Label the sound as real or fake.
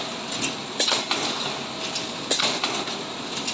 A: real